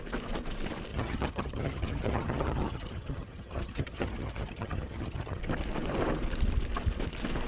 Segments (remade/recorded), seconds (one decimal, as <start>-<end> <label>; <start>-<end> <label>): 0.0-0.9 recorded; 0.9-5.4 remade; 5.4-7.5 recorded